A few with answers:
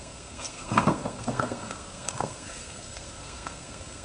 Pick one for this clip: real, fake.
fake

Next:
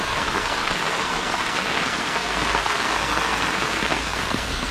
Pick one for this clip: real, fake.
fake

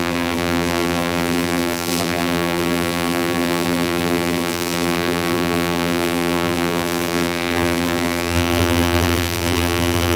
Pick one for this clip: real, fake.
fake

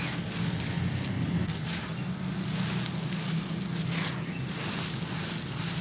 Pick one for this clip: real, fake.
real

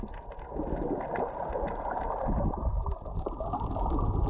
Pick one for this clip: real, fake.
real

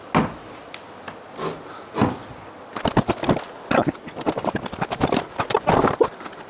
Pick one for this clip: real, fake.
real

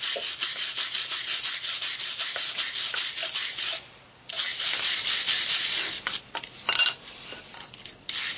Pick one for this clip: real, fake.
real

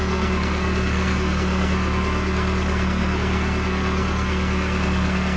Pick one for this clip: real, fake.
fake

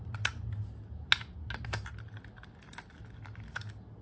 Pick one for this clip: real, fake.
real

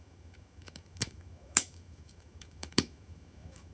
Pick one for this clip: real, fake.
fake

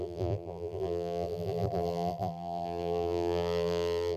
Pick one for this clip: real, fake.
fake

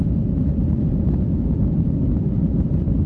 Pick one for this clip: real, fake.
real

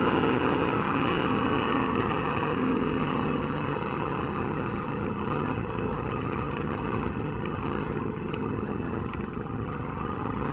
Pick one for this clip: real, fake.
fake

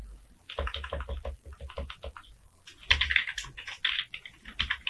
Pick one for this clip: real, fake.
real